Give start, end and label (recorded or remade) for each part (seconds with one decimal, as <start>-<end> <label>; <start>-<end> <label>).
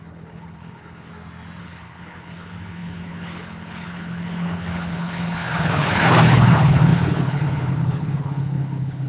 0.0-1.1 remade; 1.1-1.6 recorded; 1.6-9.1 remade